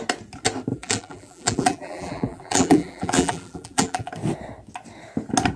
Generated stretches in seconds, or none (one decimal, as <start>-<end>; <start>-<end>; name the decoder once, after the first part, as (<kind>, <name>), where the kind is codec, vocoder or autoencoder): 0.7-4.1 (vocoder, BigVGAN v2)